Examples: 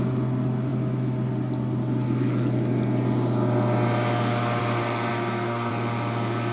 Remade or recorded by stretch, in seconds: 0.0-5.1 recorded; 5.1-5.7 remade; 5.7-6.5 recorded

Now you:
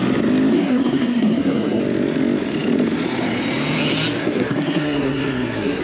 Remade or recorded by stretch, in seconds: 0.0-0.5 recorded; 0.5-1.8 remade; 1.8-4.2 recorded; 4.2-5.8 remade

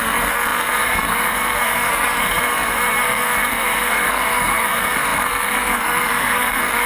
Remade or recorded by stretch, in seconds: 0.0-6.9 remade

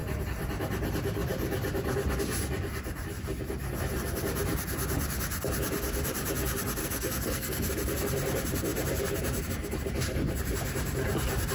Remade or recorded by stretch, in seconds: 0.0-6.8 recorded; 6.8-7.7 remade; 7.7-11.5 recorded

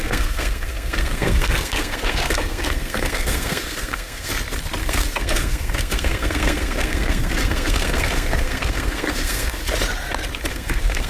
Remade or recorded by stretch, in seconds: 0.0-4.3 remade; 4.3-4.8 recorded; 4.8-9.6 remade; 9.6-10.5 recorded; 10.5-11.1 remade

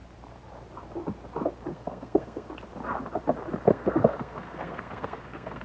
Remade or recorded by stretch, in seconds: 0.0-1.7 recorded; 1.7-2.5 remade; 2.5-3.7 recorded; 3.7-5.6 remade

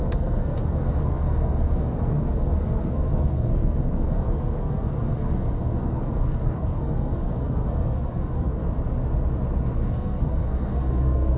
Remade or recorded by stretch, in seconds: 0.0-8.6 remade; 8.6-9.6 recorded; 9.6-11.4 remade

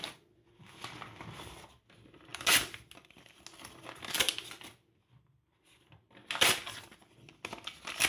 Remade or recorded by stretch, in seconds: 0.0-8.1 recorded